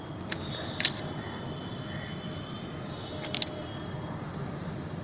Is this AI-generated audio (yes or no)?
no